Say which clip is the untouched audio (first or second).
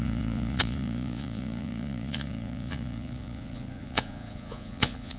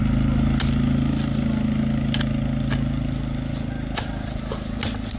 second